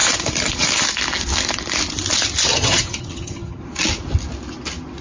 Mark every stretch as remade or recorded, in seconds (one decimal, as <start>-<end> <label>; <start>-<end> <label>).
0.0-2.5 recorded; 2.5-3.6 remade; 3.6-5.0 recorded

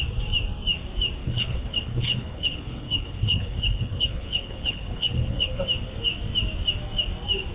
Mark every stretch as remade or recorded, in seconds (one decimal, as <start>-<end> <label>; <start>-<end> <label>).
0.0-1.2 recorded; 1.2-5.6 remade; 5.6-7.5 recorded

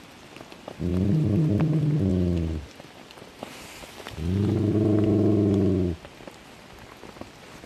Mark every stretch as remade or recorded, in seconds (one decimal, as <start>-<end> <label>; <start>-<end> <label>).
0.0-2.1 recorded; 2.1-3.5 remade; 3.5-7.7 recorded